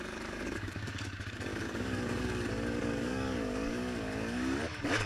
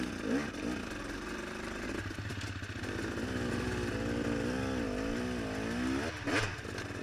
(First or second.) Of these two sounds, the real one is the second